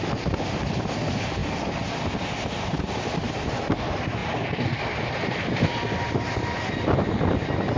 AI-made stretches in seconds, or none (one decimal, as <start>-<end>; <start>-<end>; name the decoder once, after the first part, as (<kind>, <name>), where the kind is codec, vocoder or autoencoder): none